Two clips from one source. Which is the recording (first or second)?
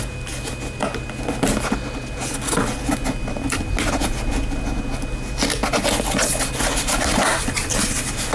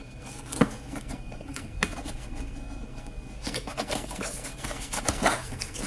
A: first